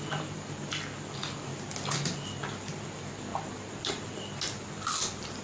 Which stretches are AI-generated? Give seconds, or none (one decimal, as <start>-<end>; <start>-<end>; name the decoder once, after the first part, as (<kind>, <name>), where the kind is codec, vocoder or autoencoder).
none